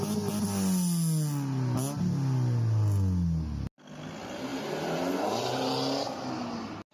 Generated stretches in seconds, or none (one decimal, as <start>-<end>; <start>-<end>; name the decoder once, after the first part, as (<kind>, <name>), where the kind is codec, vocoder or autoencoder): none